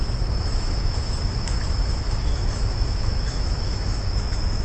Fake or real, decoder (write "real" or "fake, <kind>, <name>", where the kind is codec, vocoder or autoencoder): fake, autoencoder, DAC-VAE